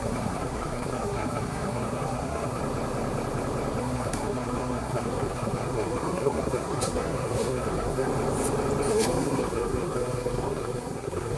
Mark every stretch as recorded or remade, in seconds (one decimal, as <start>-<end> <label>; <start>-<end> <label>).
0.0-2.6 remade; 2.6-3.8 recorded; 3.8-8.1 remade; 8.1-8.9 recorded; 8.9-11.4 remade